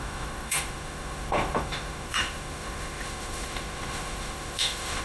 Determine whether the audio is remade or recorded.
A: remade